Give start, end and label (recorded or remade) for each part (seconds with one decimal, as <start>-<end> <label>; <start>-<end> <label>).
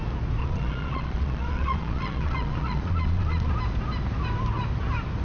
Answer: 0.0-0.4 recorded; 0.4-3.5 remade; 3.5-5.2 recorded